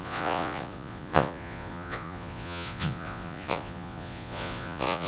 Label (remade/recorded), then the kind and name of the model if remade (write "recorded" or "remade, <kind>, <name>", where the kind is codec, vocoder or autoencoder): remade, vocoder, Vocos